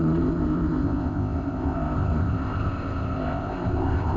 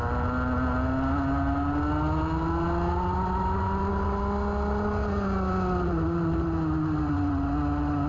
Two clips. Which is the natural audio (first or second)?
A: second